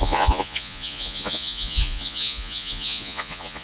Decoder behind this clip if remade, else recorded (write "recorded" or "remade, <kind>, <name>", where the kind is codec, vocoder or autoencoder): remade, vocoder, Vocos